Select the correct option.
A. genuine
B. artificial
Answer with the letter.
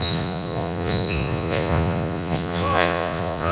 B